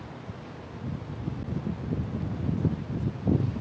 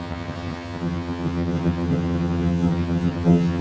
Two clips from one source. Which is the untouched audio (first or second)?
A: first